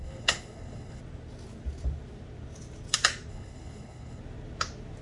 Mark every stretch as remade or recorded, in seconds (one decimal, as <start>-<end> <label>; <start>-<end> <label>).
0.0-1.0 remade; 1.0-3.3 recorded; 3.3-4.2 remade; 4.2-5.0 recorded